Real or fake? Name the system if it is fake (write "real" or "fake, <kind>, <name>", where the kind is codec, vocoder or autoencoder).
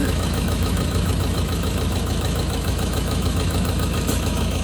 fake, autoencoder, DAC-VAE